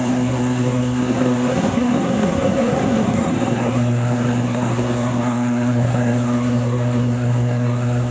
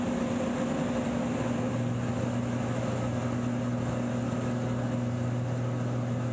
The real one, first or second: second